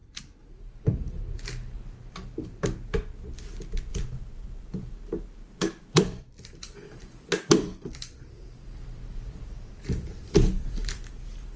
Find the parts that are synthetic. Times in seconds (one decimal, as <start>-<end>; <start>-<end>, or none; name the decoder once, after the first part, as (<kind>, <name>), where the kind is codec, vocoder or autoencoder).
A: 3.9-11.6 (vocoder, BigVGAN v2)

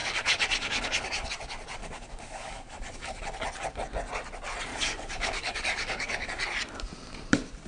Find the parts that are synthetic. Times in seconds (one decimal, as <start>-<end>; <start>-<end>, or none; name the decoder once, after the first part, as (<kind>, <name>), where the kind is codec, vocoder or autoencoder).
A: 0.0-1.3 (codec, DAC); 1.8-3.2; 4.7-6.4

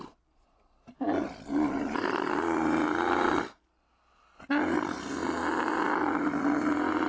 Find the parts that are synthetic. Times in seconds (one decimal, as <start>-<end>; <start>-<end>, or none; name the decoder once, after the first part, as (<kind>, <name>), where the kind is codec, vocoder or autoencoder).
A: none

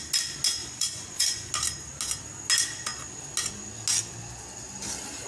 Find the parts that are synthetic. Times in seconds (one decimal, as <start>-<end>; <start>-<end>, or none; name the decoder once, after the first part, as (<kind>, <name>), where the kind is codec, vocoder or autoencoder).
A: 0.6-1.5 (vocoder, Vocos)

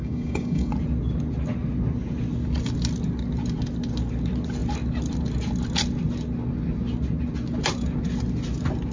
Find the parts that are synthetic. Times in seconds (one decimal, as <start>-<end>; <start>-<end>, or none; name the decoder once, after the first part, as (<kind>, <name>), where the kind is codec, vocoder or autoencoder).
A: 0.0-0.7 (codec, DAC)

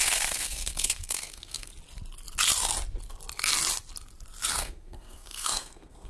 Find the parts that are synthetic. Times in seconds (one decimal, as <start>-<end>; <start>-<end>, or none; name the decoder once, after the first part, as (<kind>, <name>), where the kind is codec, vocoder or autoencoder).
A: 0.0-1.7 (codec, SNAC); 4.5-6.1